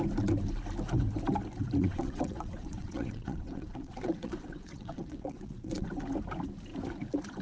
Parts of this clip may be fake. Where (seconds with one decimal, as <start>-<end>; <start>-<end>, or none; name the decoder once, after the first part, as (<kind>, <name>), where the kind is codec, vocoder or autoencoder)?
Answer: 1.8-5.9 (vocoder, WaveNeXt)